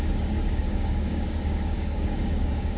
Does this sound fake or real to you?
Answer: fake